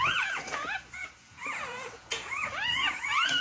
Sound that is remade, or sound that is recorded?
remade